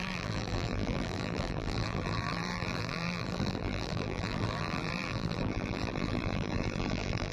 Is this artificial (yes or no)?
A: yes